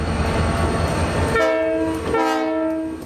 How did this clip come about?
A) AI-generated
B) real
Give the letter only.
B